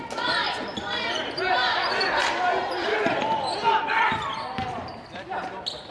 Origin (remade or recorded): recorded